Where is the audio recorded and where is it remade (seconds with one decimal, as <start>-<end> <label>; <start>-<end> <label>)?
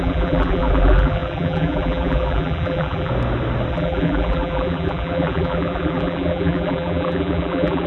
0.0-3.1 remade; 3.1-3.7 recorded; 3.7-7.9 remade